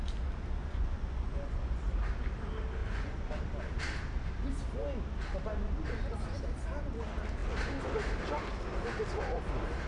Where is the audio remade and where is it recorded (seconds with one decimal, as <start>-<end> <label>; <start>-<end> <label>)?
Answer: 0.0-0.6 recorded; 0.6-1.8 remade; 1.8-2.8 recorded; 2.8-3.4 remade; 3.4-9.9 recorded

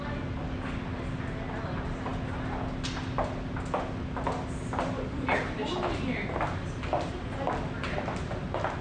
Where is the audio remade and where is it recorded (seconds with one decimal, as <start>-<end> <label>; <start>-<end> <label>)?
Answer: 0.0-8.8 recorded